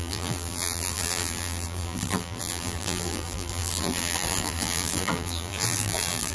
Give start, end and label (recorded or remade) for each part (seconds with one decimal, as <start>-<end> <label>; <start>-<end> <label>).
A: 0.0-6.3 remade